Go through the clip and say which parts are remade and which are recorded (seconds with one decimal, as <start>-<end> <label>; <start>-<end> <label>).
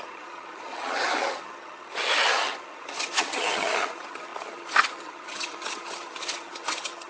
0.0-7.1 remade